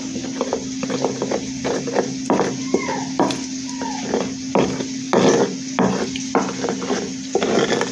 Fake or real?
real